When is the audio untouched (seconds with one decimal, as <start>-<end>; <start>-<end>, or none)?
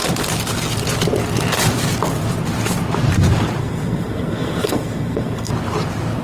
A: 0.0-3.6; 5.5-6.2